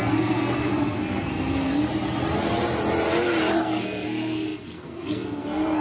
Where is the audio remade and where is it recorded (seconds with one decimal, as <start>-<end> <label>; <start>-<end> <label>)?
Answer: 0.0-1.9 remade; 1.9-3.6 recorded; 3.6-5.8 remade